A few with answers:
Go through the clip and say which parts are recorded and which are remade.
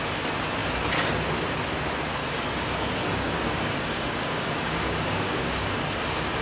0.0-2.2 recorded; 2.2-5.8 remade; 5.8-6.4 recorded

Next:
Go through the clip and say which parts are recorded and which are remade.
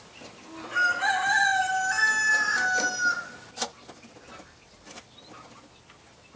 0.0-6.4 recorded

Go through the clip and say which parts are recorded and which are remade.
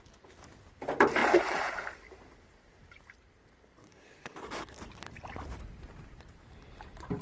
0.0-3.8 recorded; 3.8-4.8 remade; 4.8-7.2 recorded